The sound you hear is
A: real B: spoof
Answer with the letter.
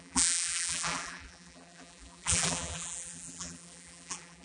B